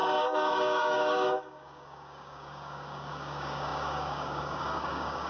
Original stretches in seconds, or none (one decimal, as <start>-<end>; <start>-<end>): none